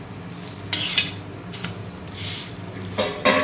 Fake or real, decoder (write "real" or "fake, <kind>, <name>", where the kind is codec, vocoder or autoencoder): real